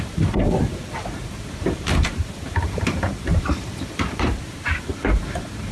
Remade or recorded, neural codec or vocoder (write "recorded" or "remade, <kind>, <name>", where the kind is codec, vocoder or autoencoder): remade, vocoder, BigVGAN v2